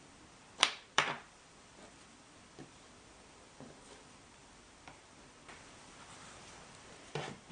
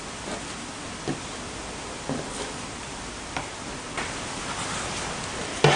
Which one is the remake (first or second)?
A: first